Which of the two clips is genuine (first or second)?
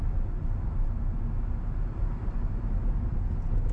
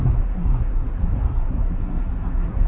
first